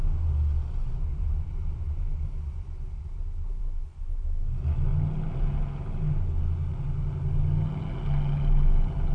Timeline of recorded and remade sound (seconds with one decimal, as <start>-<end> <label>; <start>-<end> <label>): 0.0-0.8 recorded; 0.8-3.6 remade; 3.6-9.1 recorded